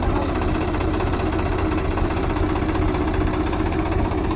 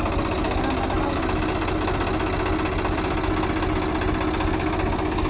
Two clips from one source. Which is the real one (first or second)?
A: second